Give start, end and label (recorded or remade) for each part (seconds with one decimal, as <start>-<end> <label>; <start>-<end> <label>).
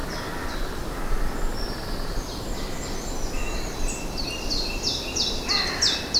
0.0-6.2 recorded